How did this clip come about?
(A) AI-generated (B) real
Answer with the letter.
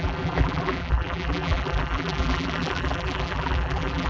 A